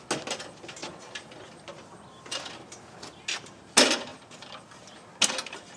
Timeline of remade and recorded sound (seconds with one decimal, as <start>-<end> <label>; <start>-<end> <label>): 0.0-4.1 recorded; 4.1-4.6 remade; 4.6-5.8 recorded